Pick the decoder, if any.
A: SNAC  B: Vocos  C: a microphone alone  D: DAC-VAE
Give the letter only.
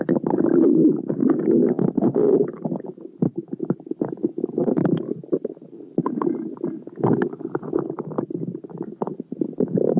C